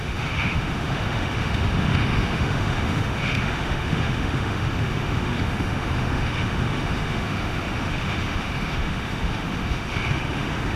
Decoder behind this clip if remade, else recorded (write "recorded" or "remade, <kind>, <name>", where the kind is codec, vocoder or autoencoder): remade, autoencoder, DAC-VAE